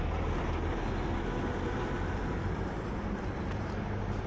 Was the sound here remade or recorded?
recorded